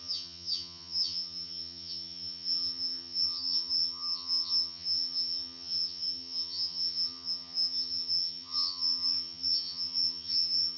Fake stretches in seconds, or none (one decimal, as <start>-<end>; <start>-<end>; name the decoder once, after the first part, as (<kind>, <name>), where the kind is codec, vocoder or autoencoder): 0.0-10.8 (vocoder, HiFi-GAN)